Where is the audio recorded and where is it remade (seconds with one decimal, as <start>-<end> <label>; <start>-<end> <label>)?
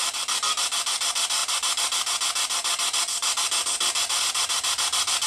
0.0-5.3 recorded